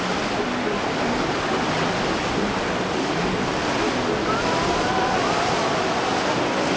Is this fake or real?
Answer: real